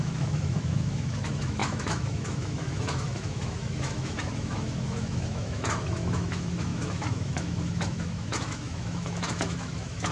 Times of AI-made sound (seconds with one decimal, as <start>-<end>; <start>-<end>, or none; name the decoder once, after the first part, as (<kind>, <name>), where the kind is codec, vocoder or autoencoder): 0.0-10.1 (autoencoder, DAC-VAE)